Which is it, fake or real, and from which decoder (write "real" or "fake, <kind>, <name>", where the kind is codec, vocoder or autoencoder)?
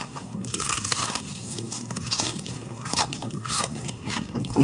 fake, codec, SNAC